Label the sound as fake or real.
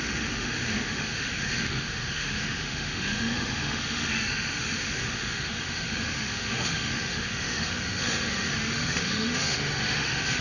fake